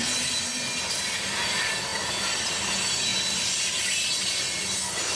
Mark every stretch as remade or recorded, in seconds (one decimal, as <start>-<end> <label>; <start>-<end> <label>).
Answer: 0.0-5.2 recorded

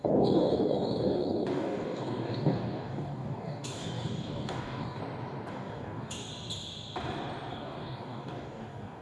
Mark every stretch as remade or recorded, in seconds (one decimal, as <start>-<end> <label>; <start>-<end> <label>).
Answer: 0.0-5.0 remade; 5.0-5.5 recorded; 5.5-6.3 remade; 6.3-7.5 recorded; 7.5-9.0 remade

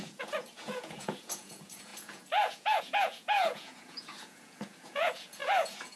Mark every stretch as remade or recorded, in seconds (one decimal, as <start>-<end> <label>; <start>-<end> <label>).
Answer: 0.0-6.0 remade

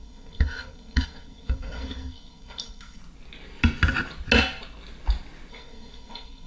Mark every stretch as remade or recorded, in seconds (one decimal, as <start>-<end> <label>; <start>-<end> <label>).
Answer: 0.0-3.0 remade; 3.0-5.5 recorded; 5.5-6.5 remade

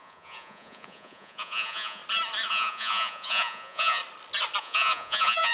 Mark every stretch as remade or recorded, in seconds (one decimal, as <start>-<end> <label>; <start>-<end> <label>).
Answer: 0.0-2.0 remade; 2.0-2.5 recorded; 2.5-4.0 remade; 4.0-4.6 recorded; 4.6-5.5 remade

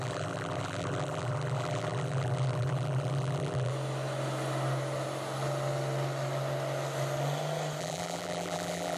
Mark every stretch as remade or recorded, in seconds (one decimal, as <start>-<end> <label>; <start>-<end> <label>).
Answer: 0.0-3.7 remade; 3.7-7.8 recorded; 7.8-9.0 remade

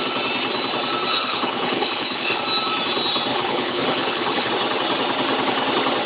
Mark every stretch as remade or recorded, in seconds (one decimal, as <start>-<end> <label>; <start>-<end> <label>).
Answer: 0.0-1.1 recorded; 1.1-2.4 remade; 2.4-3.3 recorded; 3.3-4.5 remade; 4.5-6.1 recorded

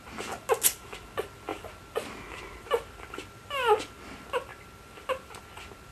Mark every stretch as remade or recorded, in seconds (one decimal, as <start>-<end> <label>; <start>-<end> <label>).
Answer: 0.0-5.9 recorded